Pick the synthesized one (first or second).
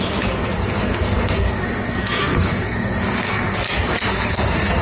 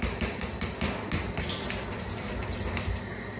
first